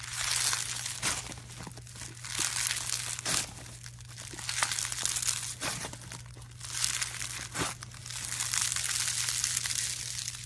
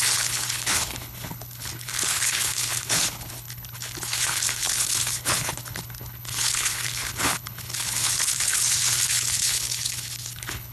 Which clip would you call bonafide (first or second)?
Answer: first